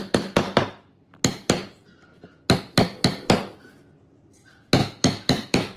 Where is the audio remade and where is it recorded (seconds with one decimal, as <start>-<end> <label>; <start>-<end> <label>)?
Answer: 0.0-4.8 recorded; 4.8-5.8 remade